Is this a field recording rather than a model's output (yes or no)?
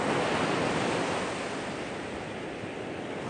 yes